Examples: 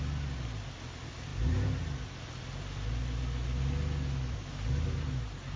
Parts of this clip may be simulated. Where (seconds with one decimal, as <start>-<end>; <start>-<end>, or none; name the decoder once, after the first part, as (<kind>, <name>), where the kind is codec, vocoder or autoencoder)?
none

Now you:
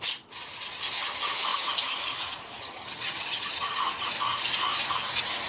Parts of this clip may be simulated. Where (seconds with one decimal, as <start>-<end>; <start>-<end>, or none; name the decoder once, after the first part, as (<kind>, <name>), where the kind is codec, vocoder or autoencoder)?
2.6-3.8 (vocoder, HiFi-GAN)

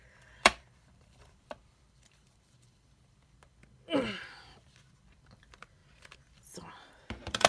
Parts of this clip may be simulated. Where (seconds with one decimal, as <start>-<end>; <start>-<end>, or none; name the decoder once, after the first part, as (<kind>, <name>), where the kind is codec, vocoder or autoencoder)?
0.0-3.6 (vocoder, BigVGAN v2); 5.0-5.8; 6.7-7.5